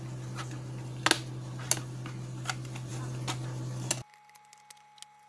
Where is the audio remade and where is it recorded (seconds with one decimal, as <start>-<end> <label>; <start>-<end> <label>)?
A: 0.0-5.3 recorded